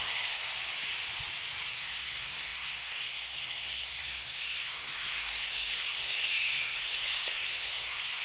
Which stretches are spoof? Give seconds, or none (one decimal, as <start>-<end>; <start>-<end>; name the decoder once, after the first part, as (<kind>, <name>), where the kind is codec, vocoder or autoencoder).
0.0-0.4 (codec, SNAC); 1.7-8.2